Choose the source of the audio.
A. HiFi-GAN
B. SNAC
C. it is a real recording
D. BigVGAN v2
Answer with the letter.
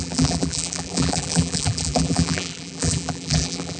D